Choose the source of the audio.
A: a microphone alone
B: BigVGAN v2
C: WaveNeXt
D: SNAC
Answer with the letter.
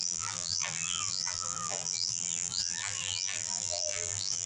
B